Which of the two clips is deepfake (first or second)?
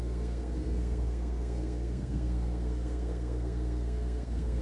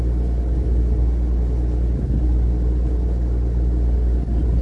first